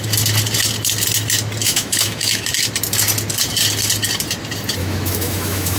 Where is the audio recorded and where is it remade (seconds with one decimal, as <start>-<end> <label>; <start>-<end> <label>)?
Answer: 0.0-1.6 recorded; 1.6-2.5 remade; 2.5-4.8 recorded; 4.8-5.8 remade